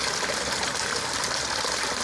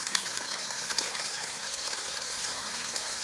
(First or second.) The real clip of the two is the first